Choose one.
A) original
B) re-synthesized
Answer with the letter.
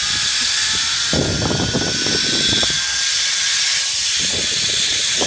A